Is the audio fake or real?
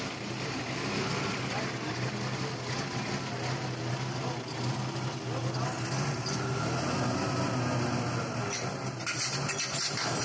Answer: real